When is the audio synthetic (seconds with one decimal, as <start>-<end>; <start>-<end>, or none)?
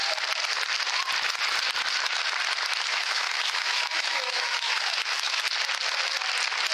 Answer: 2.9-5.4